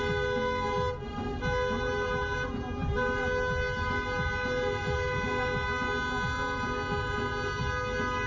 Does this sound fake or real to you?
real